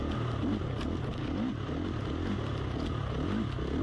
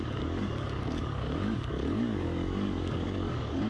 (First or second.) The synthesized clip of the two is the second